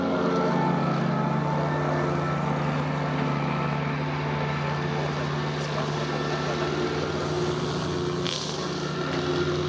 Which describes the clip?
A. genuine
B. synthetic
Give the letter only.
A